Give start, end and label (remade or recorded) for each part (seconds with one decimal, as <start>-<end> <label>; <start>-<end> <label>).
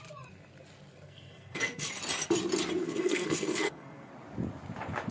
0.0-0.9 recorded; 0.9-1.9 remade; 1.9-2.8 recorded; 2.8-4.1 remade; 4.1-5.1 recorded